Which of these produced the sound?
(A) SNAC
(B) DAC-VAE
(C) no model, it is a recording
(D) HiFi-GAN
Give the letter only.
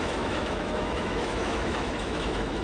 B